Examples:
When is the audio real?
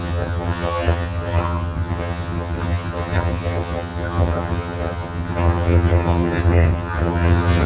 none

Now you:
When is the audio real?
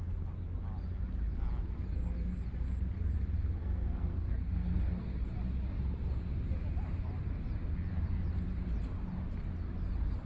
0.0-3.6; 5.3-10.3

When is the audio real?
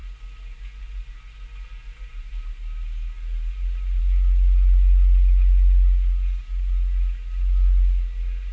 0.0-8.5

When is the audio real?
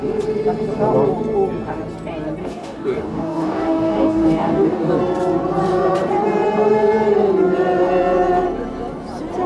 0.0-2.4; 4.9-9.5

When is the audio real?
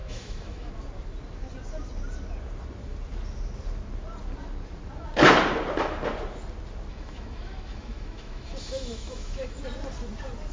0.7-6.9; 9.6-10.5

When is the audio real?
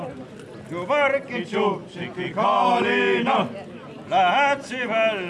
0.0-5.3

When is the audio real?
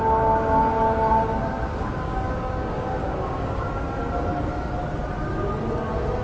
0.0-1.7; 3.7-6.2